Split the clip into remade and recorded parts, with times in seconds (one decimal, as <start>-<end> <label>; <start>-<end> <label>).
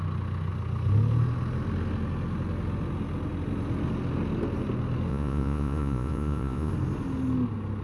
0.0-5.1 recorded; 5.1-6.7 remade; 6.7-7.8 recorded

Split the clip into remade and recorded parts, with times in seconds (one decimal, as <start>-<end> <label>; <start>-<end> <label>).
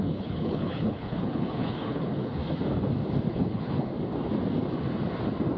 0.0-2.4 remade; 2.4-3.3 recorded; 3.3-3.9 remade; 3.9-5.6 recorded